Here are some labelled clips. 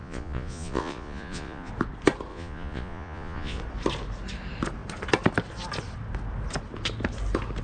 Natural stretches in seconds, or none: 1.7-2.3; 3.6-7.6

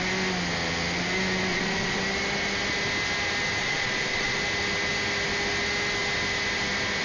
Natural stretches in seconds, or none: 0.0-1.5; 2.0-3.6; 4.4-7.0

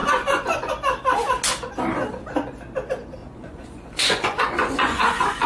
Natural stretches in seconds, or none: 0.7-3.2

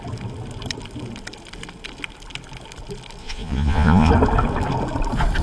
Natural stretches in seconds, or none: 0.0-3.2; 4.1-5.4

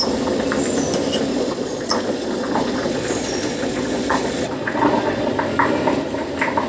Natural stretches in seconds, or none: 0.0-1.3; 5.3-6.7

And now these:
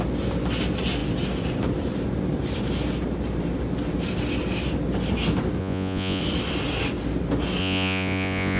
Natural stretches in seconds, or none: 0.0-5.6; 6.2-7.6

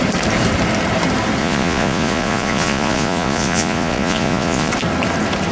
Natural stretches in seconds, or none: 0.0-1.4; 4.7-5.5

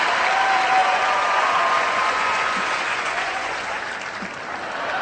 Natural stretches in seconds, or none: 0.0-0.8; 3.8-5.0